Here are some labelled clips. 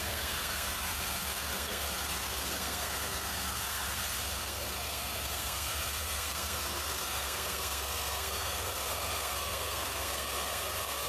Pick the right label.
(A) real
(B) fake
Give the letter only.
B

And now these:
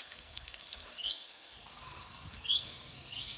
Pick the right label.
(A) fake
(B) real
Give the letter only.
A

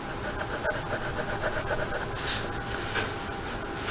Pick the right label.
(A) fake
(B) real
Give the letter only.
B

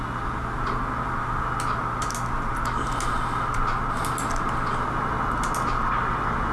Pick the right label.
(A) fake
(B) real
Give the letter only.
B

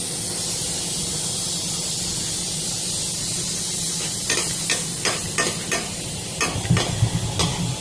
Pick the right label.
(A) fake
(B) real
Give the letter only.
B